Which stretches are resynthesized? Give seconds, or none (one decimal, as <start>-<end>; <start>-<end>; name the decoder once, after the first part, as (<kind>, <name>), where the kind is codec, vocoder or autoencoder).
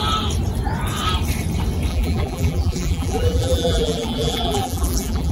1.9-5.3 (vocoder, BigVGAN v2)